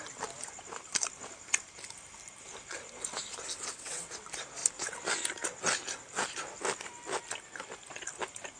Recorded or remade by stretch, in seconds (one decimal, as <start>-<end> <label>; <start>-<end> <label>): 0.0-3.5 recorded; 3.5-4.1 remade; 4.1-8.6 recorded